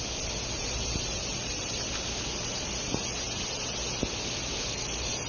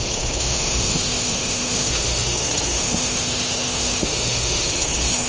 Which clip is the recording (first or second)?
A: first